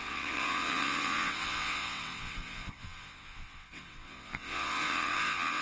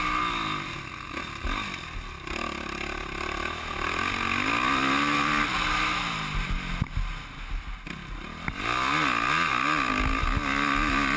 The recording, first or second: second